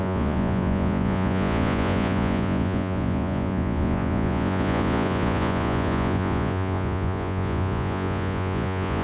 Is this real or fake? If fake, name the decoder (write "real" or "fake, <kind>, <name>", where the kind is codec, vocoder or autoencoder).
fake, vocoder, Vocos